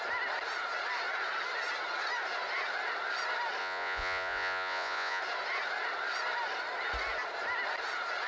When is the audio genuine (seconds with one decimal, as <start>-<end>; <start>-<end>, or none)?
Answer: 0.0-3.6; 5.2-8.3